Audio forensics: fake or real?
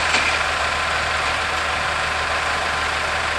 real